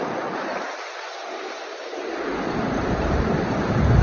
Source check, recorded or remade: remade